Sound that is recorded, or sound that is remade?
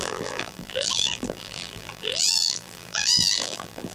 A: remade